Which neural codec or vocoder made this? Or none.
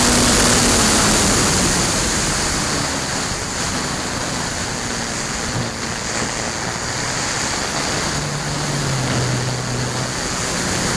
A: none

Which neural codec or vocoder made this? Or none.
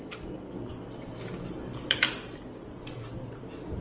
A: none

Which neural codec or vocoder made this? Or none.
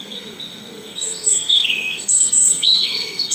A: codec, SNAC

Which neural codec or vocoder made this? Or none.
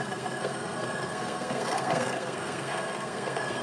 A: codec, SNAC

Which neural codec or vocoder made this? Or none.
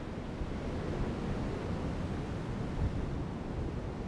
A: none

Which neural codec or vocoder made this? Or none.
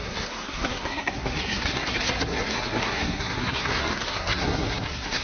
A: codec, SNAC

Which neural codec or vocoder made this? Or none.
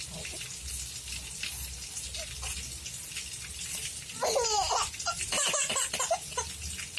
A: none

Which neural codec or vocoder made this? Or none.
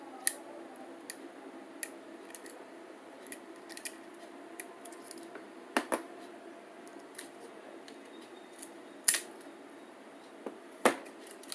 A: none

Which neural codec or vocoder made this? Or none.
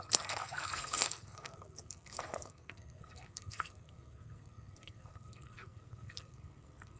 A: codec, SNAC